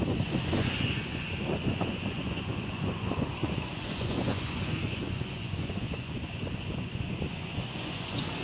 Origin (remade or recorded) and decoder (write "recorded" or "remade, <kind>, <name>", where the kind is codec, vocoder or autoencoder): remade, vocoder, Vocos